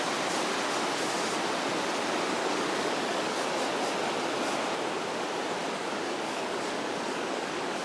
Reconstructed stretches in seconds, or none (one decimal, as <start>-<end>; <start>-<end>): 2.4-3.5; 5.6-7.8